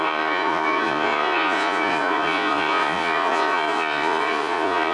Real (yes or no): no